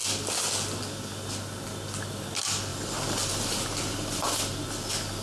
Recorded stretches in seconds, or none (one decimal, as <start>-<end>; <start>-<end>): 0.0-2.7; 4.2-5.2